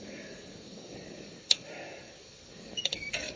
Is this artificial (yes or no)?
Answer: yes